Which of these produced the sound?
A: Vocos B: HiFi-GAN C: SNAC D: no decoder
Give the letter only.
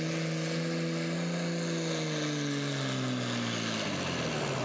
D